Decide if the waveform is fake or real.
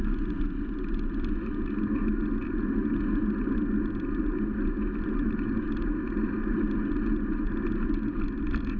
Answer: real